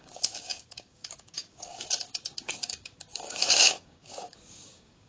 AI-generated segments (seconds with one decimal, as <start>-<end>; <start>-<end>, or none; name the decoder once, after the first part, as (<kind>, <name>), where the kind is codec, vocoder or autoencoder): 0.0-5.1 (codec, DAC)